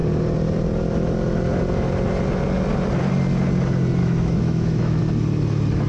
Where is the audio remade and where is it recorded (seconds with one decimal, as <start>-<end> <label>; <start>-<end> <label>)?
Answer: 0.0-4.0 recorded; 4.0-5.0 remade; 5.0-5.9 recorded